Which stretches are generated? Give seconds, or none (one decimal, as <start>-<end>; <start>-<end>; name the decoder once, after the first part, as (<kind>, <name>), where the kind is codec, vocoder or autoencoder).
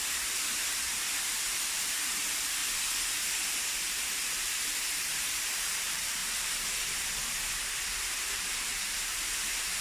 0.0-2.6 (vocoder, BigVGAN v2); 3.5-7.2; 8.3-9.8